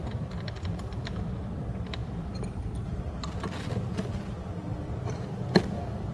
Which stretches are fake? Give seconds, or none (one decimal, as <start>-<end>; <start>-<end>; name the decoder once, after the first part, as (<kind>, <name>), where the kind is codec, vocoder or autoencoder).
2.0-3.0 (vocoder, BigVGAN v2); 4.7-6.1